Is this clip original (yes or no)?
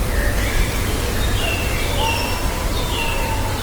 no